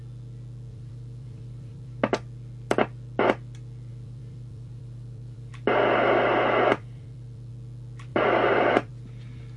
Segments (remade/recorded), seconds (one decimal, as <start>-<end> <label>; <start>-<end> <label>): 0.0-0.7 recorded; 0.7-2.0 remade; 2.0-3.9 recorded; 3.9-5.5 remade; 5.5-6.7 recorded; 6.7-7.5 remade; 7.5-8.1 recorded; 8.1-8.9 remade; 8.9-9.6 recorded